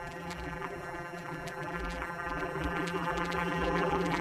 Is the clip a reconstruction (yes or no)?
yes